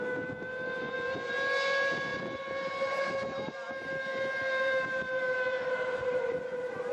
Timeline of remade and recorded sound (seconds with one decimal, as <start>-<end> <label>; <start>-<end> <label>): 0.0-6.9 recorded